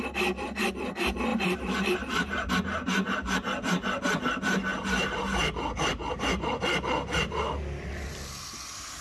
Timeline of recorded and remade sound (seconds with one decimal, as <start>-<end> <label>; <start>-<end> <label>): 0.0-1.3 recorded; 1.3-2.5 remade; 2.5-5.9 recorded; 5.9-6.6 remade; 6.6-9.0 recorded